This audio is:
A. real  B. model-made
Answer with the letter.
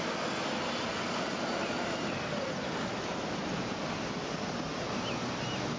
A